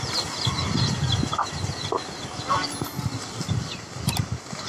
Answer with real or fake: real